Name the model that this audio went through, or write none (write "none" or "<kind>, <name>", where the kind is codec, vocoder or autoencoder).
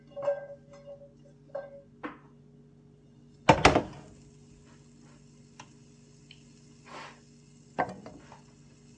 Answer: none